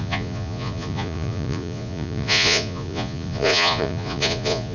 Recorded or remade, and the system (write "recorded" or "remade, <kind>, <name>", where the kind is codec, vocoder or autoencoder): remade, vocoder, Vocos